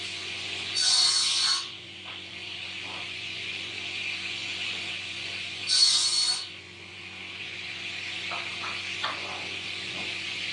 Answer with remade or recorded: remade